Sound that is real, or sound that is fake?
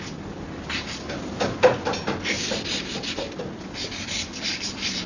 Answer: real